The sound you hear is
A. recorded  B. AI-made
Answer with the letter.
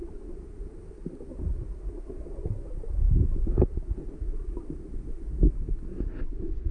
A